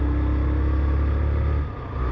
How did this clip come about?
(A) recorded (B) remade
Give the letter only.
A